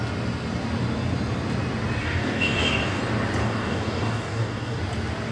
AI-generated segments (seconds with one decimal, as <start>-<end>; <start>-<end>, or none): 2.0-3.0; 3.4-4.8